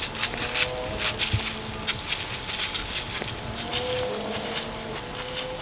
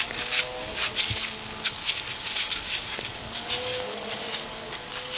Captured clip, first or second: first